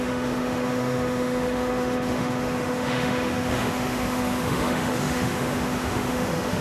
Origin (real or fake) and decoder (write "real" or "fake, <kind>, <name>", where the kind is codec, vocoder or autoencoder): fake, autoencoder, DAC-VAE